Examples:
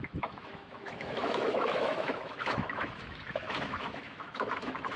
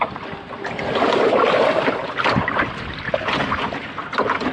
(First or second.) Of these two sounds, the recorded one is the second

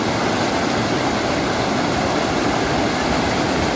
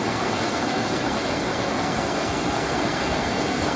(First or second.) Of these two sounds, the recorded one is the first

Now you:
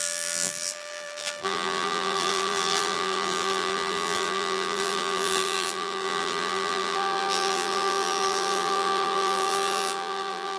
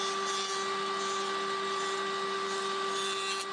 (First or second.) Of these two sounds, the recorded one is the second